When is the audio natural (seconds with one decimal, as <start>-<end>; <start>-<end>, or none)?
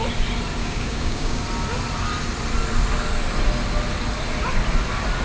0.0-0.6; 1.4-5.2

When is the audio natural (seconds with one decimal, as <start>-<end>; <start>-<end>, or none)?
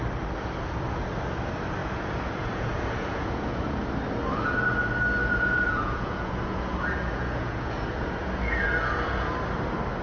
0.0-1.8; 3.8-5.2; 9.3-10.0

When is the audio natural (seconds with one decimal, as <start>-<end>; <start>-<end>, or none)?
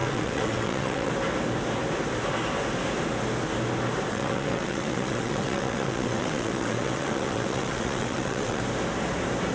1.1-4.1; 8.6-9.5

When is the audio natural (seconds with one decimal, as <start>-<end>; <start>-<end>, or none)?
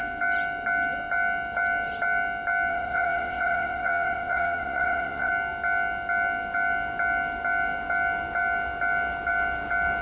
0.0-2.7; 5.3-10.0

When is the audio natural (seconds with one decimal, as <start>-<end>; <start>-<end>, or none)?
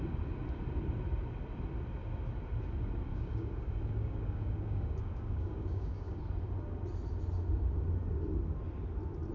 0.0-3.1; 6.2-9.3